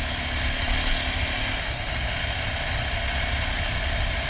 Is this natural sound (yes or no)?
yes